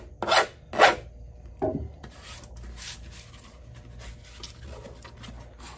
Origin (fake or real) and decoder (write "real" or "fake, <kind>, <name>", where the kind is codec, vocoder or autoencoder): real